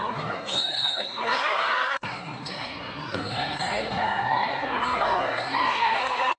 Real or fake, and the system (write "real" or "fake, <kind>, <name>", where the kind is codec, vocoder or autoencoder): fake, codec, SNAC